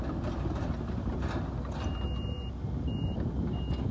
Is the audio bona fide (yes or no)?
yes